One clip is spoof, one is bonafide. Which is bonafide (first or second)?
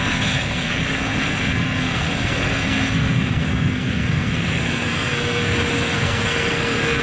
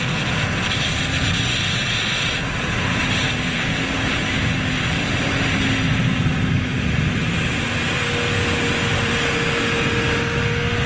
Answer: second